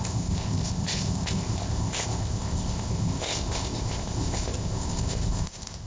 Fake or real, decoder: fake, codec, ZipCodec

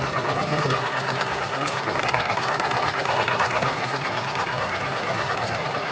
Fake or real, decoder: fake, codec, SNAC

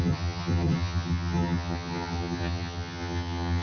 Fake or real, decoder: fake, vocoder, HiFi-GAN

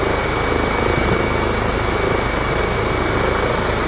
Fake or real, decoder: real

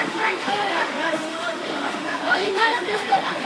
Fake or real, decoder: fake, autoencoder, DAC-VAE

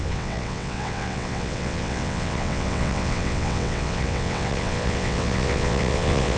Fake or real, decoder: fake, vocoder, WaveNeXt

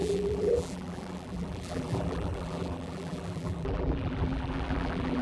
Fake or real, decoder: fake, vocoder, BigVGAN v2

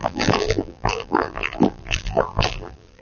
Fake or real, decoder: fake, vocoder, BigVGAN v2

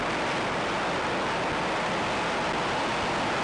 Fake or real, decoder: real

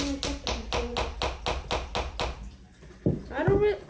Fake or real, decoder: real